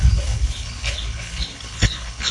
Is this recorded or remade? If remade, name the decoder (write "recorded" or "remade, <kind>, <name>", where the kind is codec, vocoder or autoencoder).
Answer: remade, codec, HILCodec